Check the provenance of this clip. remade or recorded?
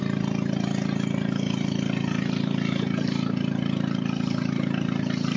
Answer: recorded